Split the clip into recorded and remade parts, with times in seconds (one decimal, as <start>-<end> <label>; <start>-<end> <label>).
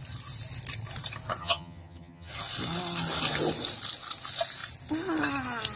0.0-1.4 recorded; 1.4-2.3 remade; 2.3-5.8 recorded